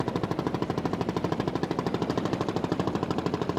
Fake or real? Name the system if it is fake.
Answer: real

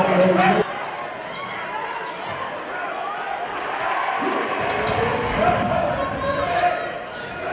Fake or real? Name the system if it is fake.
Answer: real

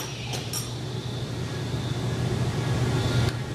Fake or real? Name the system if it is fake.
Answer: real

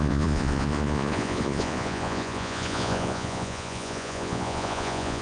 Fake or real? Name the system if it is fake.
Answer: fake, vocoder, Vocos